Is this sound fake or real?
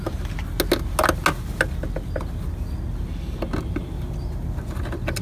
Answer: real